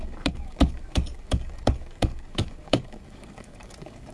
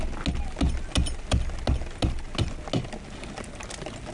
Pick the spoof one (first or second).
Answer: first